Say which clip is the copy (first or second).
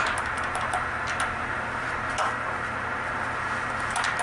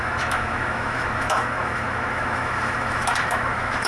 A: second